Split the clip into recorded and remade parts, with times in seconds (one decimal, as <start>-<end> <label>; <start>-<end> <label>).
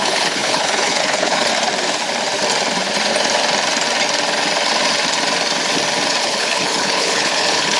0.0-1.5 remade; 1.5-6.2 recorded; 6.2-7.8 remade